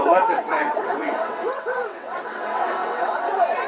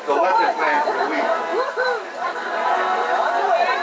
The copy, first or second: first